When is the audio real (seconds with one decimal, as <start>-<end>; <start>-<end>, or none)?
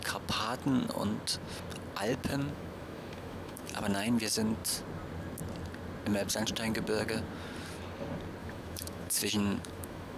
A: 0.0-2.3; 3.8-8.4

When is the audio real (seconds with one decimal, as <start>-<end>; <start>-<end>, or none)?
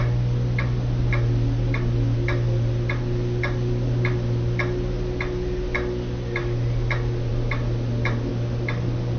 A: 0.0-9.2